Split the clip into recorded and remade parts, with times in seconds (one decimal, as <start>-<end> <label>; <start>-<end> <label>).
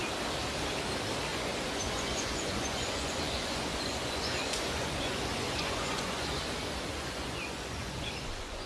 0.0-1.3 recorded; 1.3-6.4 remade; 6.4-6.9 recorded; 6.9-8.7 remade